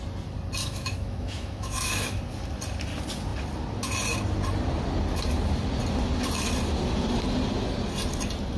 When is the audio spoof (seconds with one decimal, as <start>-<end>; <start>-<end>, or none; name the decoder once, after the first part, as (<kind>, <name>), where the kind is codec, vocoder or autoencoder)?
0.6-2.2 (autoencoder, DAC-VAE)